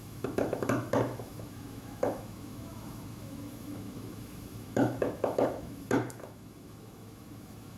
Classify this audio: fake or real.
fake